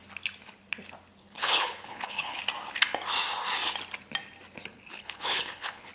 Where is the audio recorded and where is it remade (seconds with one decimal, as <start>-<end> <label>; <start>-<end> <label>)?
0.0-1.2 recorded; 1.2-2.4 remade; 2.4-4.9 recorded; 4.9-5.9 remade